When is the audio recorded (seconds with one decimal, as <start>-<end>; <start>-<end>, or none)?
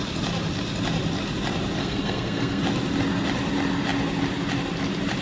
0.0-1.8; 2.6-5.2